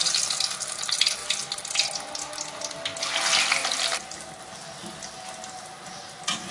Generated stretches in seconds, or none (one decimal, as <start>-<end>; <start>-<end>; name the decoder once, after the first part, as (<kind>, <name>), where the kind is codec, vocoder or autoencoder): 1.2-1.7 (vocoder, BigVGAN v2); 3.6-5.4